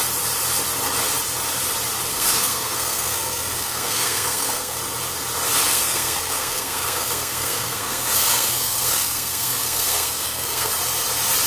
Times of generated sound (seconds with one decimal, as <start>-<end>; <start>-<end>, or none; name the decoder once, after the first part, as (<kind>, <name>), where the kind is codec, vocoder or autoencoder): 2.1-4.8 (codec, SNAC); 5.7-10.7